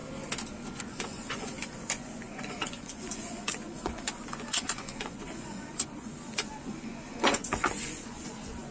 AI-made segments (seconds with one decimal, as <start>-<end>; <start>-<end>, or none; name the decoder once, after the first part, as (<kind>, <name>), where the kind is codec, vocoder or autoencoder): 0.8-8.7 (vocoder, Vocos)